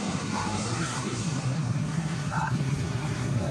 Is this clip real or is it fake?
fake